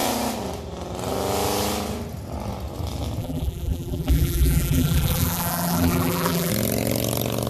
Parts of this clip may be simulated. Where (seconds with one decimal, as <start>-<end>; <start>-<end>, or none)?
3.2-6.5

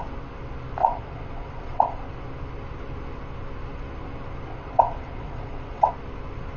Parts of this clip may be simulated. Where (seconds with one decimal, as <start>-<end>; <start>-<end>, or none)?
0.8-2.0; 4.5-5.9

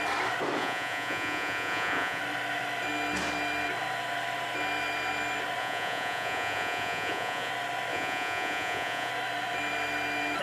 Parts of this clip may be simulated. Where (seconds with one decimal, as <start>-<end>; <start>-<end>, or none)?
0.6-2.2; 5.6-7.5; 7.9-9.1